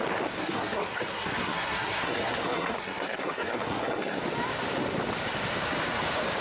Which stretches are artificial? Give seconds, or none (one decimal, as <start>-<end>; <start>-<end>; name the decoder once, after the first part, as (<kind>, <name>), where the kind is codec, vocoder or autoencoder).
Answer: 0.4-4.2 (codec, SNAC)